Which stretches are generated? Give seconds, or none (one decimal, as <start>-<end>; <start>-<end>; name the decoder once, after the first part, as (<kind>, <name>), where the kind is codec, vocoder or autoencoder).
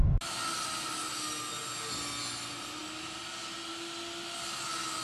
none